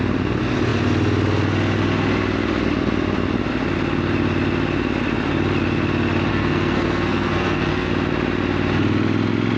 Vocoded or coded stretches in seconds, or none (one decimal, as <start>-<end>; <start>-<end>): 6.3-7.9

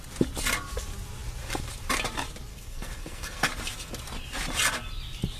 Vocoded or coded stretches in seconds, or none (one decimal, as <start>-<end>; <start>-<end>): 2.5-3.5

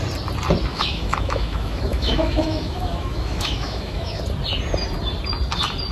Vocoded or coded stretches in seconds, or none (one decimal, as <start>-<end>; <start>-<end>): 0.7-4.2

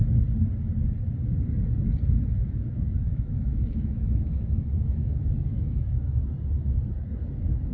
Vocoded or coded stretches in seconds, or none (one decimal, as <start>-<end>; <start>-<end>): 2.4-6.2

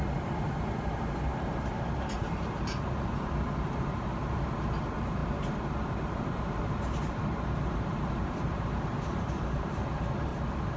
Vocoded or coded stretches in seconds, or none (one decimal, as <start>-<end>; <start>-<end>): 0.0-10.3

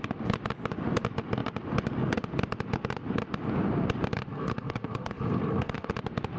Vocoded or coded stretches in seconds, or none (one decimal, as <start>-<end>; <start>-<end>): 4.3-5.9